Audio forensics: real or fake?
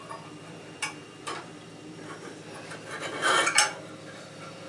fake